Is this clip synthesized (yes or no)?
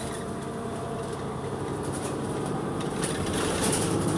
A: yes